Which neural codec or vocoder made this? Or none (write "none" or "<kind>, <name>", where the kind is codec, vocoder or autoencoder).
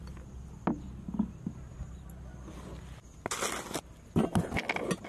none